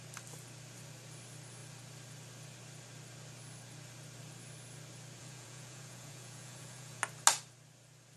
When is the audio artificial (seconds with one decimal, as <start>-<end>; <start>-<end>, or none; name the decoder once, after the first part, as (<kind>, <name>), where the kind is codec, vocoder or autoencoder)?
5.2-7.0 (vocoder, Vocos)